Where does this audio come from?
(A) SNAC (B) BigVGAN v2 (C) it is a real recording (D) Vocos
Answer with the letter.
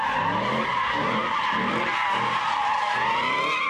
C